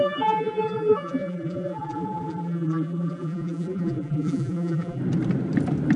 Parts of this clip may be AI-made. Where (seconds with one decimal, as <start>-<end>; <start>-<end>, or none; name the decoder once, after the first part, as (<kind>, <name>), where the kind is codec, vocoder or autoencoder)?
0.0-5.0 (vocoder, BigVGAN v2)